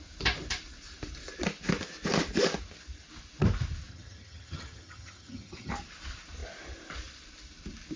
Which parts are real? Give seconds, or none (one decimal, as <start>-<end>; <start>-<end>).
0.0-3.9; 5.7-8.0